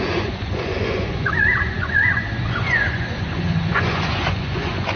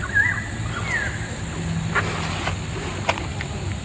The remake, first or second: first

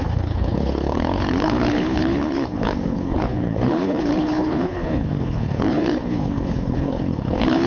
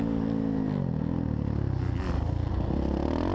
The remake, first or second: first